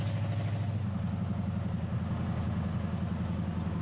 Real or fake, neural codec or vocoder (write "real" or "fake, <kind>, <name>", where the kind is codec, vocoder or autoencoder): real